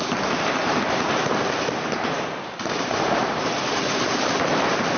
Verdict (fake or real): fake